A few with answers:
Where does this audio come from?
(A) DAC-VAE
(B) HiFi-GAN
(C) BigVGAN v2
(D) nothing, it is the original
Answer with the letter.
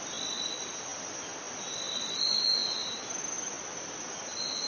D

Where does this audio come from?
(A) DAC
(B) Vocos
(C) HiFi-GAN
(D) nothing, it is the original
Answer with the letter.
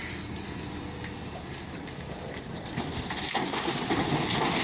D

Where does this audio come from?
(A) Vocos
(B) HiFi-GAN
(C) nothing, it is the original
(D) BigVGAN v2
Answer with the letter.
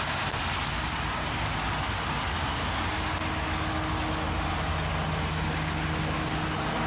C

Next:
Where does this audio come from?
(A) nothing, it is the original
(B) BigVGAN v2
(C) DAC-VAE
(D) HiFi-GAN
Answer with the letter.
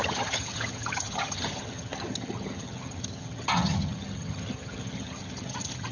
D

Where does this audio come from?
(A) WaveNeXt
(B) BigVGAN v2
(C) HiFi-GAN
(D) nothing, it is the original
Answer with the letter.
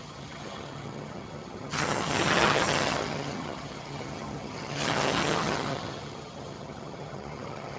C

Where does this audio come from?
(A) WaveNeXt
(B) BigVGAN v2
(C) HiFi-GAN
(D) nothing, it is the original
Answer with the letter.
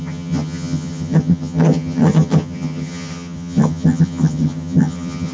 C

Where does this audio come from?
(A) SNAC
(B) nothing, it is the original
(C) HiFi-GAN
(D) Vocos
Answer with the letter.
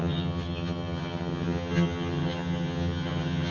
C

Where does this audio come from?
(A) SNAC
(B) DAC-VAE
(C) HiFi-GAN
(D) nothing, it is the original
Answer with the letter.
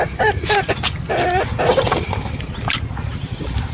D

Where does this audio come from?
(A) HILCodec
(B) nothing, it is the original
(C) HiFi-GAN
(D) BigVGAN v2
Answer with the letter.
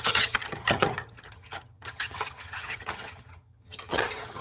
C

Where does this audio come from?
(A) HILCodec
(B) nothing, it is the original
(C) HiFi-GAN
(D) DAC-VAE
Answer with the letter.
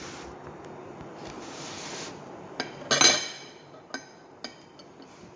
B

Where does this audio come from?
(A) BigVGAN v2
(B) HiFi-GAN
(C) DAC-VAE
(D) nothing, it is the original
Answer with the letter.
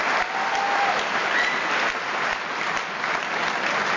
D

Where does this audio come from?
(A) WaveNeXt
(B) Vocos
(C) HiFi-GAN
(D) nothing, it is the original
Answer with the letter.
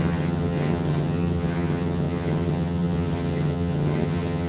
C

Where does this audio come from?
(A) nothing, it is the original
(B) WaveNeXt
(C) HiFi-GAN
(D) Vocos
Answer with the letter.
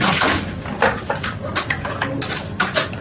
A